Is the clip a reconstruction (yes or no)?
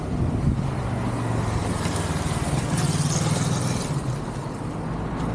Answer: no